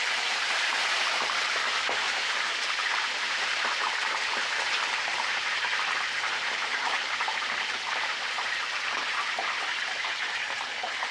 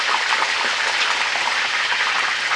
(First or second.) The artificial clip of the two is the first